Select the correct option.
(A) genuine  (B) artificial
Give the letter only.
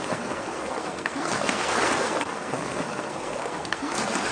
B